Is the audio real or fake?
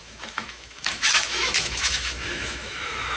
fake